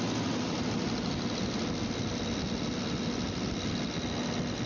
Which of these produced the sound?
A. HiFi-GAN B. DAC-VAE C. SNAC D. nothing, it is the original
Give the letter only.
D